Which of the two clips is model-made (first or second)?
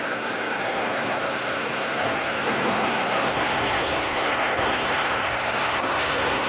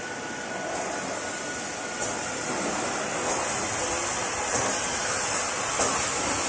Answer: first